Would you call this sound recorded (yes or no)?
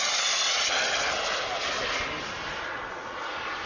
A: yes